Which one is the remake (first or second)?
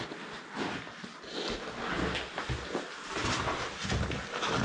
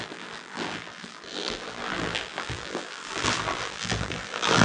second